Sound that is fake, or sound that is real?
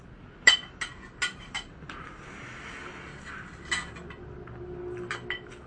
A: real